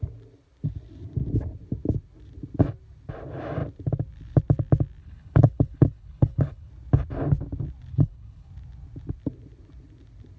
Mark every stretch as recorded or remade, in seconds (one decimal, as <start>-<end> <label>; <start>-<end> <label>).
0.0-5.0 recorded; 5.0-6.7 remade; 6.7-7.9 recorded; 7.9-8.5 remade; 8.5-10.4 recorded